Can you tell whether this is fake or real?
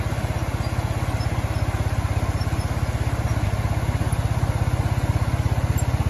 real